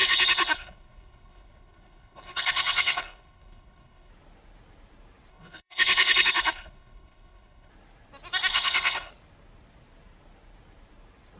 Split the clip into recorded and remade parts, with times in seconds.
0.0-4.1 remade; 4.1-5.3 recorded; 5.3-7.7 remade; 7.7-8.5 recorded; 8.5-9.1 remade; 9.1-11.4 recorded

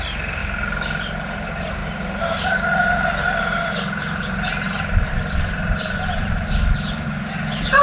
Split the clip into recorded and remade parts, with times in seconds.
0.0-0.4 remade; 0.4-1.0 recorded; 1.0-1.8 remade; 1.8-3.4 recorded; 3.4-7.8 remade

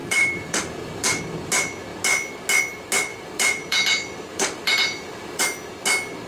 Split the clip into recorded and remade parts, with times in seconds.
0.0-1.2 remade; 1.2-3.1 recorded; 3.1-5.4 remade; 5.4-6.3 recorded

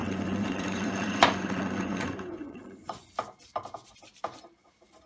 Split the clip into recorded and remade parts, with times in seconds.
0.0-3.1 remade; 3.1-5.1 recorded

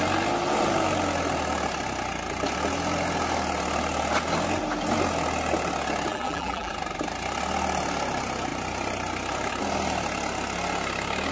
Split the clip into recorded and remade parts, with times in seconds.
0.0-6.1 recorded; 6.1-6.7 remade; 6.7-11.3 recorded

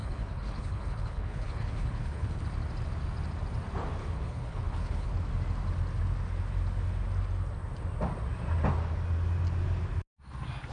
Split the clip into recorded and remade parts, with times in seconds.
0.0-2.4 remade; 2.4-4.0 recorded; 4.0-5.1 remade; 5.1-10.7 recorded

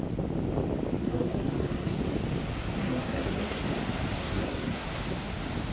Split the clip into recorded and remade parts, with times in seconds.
0.0-1.0 recorded; 1.0-2.0 remade; 2.0-2.8 recorded; 2.8-3.6 remade; 3.6-4.2 recorded; 4.2-5.0 remade; 5.0-5.7 recorded